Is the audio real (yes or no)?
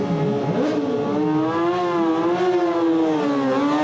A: yes